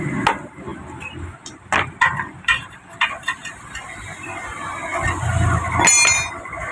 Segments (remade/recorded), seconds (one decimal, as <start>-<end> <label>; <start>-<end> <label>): 0.0-6.7 recorded